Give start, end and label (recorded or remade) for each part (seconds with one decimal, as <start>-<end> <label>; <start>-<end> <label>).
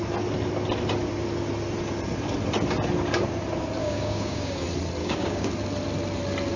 0.0-3.8 recorded; 3.8-4.6 remade; 4.6-5.0 recorded; 5.0-5.5 remade; 5.5-6.6 recorded